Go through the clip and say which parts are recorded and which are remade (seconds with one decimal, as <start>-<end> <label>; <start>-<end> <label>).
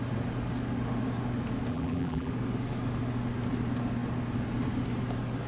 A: 0.0-1.7 recorded; 1.7-2.3 remade; 2.3-5.5 recorded